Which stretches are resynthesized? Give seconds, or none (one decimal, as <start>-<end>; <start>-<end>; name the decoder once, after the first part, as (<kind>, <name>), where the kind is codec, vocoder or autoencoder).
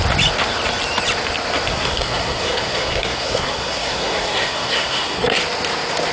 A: 1.7-5.4 (codec, SNAC)